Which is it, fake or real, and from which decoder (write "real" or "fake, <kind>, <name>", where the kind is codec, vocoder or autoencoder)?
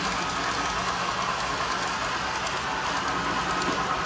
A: real